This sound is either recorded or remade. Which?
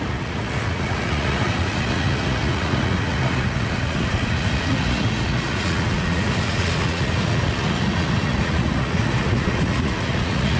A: remade